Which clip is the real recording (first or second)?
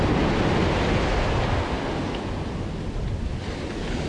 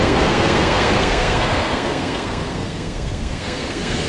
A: first